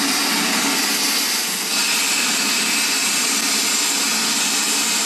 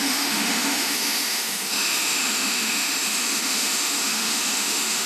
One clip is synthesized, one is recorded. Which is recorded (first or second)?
first